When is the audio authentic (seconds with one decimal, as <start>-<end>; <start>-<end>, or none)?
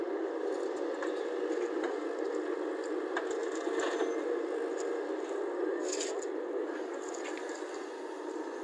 0.0-8.6